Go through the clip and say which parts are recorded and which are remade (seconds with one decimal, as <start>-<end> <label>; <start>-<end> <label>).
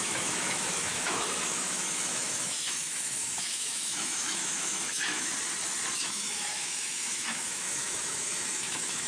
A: 0.0-5.3 remade; 5.3-6.0 recorded; 6.0-9.1 remade